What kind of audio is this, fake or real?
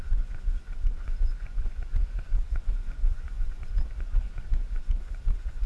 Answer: fake